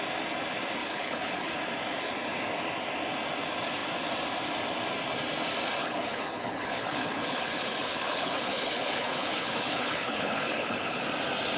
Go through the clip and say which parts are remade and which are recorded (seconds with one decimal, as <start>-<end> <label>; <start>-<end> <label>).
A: 0.0-0.8 recorded; 0.8-1.5 remade; 1.5-5.8 recorded; 5.8-11.0 remade; 11.0-11.6 recorded